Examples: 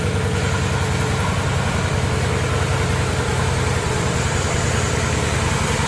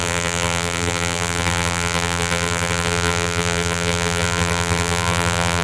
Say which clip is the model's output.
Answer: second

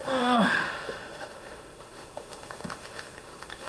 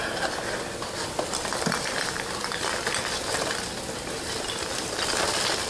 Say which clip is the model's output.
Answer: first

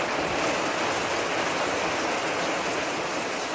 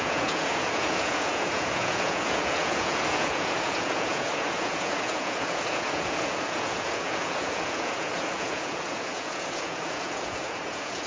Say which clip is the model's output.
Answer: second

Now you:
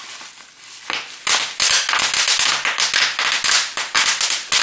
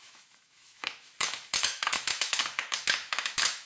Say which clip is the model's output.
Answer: second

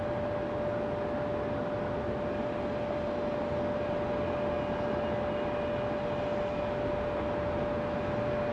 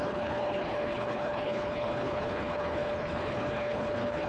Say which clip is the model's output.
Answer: second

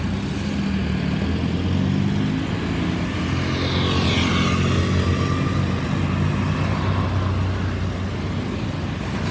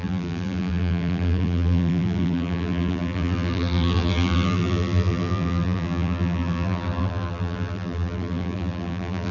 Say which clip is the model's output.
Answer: second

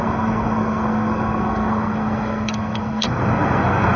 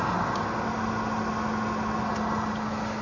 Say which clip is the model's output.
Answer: first